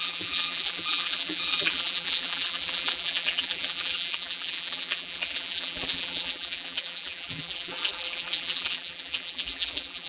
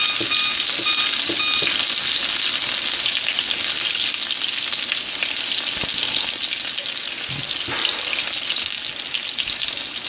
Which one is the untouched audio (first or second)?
second